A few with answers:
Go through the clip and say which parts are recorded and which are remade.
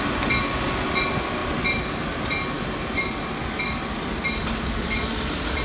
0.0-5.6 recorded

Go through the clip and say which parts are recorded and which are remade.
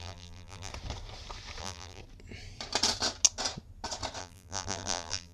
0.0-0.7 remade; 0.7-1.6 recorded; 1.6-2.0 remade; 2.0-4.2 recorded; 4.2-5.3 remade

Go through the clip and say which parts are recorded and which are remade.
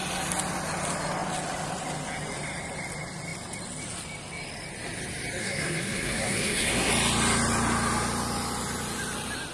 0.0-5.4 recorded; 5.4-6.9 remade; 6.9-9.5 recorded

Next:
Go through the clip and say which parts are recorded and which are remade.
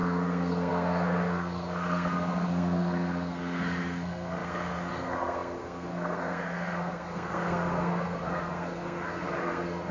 0.0-9.9 remade